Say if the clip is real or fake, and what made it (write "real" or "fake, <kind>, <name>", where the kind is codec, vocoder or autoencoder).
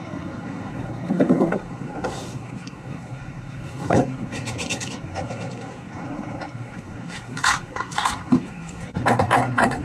fake, codec, SNAC